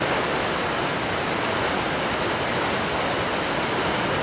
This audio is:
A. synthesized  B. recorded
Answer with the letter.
B